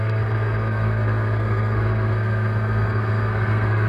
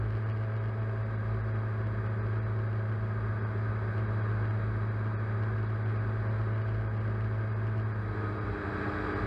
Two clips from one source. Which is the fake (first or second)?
first